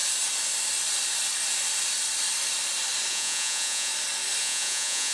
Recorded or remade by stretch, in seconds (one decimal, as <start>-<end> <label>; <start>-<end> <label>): 0.0-3.1 recorded; 3.1-3.9 remade; 3.9-4.4 recorded; 4.4-5.1 remade